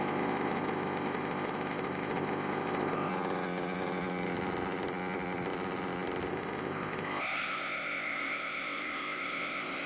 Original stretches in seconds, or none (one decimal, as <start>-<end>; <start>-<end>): 3.1-6.3